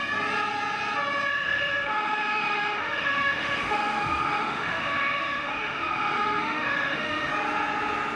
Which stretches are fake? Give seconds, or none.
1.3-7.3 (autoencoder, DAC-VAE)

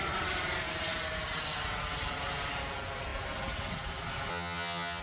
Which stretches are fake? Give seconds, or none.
4.3-5.0 (vocoder, HiFi-GAN)

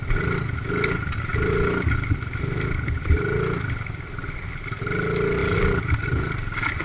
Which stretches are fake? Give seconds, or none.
5.4-5.9 (vocoder, BigVGAN v2)

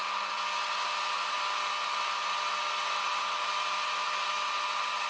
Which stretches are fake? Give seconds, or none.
none

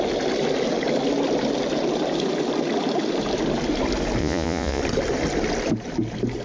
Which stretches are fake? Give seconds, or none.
4.2-4.8 (vocoder, Vocos)

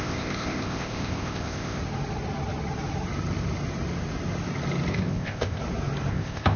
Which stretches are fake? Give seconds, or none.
0.0-1.8 (codec, ZipCodec); 4.9-5.6; 6.1-6.6